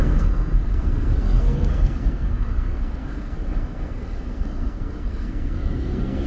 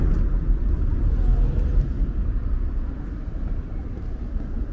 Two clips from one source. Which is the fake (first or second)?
first